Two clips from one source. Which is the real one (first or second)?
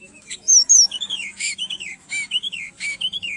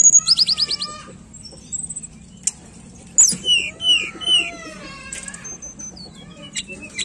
second